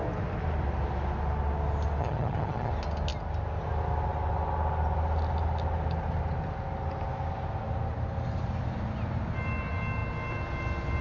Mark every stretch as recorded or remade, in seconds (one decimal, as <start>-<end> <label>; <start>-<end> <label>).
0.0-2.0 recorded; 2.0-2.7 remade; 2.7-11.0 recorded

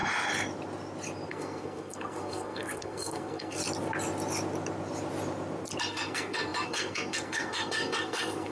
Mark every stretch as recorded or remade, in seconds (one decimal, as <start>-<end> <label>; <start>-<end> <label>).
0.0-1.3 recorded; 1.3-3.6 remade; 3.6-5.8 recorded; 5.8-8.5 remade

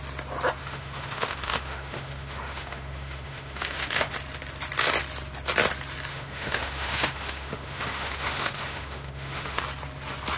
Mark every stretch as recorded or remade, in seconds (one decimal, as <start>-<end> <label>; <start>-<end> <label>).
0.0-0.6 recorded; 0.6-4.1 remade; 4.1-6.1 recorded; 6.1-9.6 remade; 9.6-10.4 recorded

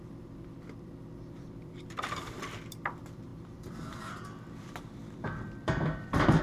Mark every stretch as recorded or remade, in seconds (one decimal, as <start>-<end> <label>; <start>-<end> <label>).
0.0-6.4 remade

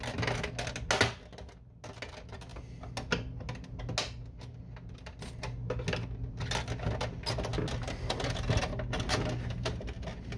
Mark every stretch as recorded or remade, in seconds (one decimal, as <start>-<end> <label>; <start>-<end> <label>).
0.0-10.4 recorded

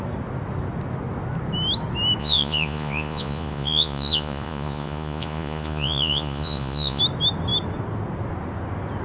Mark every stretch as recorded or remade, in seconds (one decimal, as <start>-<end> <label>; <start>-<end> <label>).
0.0-2.2 recorded; 2.2-7.0 remade; 7.0-9.0 recorded